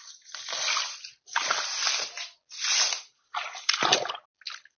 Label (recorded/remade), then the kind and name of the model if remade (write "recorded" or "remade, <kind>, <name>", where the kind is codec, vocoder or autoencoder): recorded